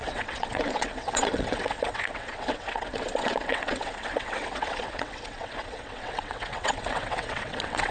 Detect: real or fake fake